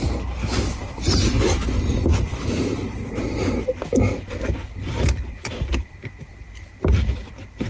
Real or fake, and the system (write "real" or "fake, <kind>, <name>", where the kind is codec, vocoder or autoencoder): real